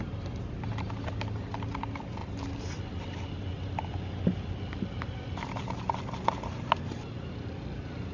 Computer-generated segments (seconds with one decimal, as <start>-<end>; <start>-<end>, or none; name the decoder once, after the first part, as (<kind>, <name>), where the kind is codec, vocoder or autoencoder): none